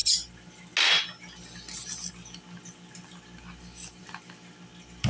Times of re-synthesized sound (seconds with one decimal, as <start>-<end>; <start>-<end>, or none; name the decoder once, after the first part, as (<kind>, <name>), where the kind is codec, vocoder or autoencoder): none